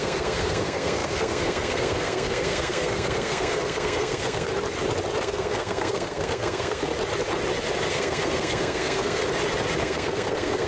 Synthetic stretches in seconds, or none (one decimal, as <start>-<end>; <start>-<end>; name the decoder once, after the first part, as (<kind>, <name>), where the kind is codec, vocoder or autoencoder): 0.0-4.5 (codec, SNAC); 5.2-6.9; 7.9-9.2; 9.8-10.7